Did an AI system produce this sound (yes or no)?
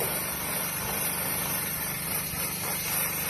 yes